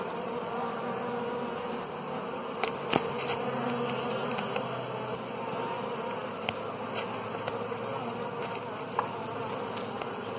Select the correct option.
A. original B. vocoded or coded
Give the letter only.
A